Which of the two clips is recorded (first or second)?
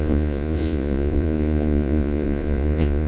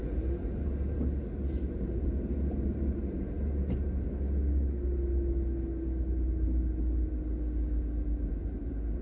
second